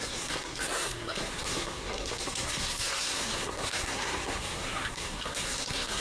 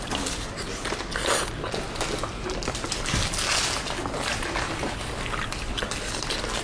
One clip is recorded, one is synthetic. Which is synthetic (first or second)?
first